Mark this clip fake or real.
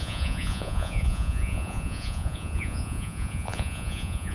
fake